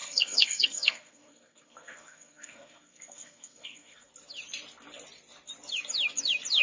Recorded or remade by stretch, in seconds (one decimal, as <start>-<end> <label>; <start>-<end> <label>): 0.0-4.1 remade; 4.1-6.6 recorded